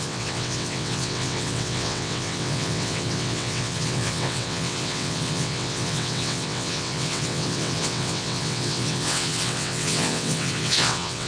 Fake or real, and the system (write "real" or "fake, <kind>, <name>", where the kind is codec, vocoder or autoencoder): fake, vocoder, WaveNeXt